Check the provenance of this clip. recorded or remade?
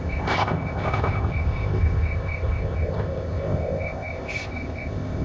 remade